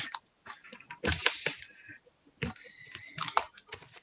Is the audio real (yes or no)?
yes